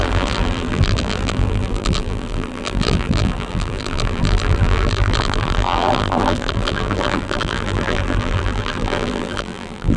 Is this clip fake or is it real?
fake